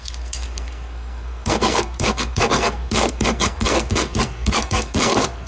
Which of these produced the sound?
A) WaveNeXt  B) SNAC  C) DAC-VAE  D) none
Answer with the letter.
B